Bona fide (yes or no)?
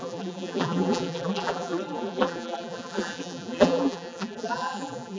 no